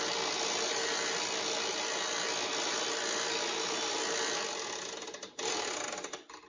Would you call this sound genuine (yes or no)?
yes